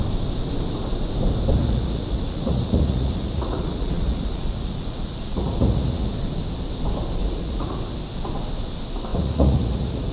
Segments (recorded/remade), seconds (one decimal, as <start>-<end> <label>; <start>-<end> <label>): 0.0-1.6 recorded; 1.6-6.1 remade; 6.1-7.2 recorded; 7.2-7.8 remade; 7.8-9.1 recorded; 9.1-10.1 remade